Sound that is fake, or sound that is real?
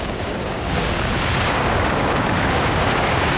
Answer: fake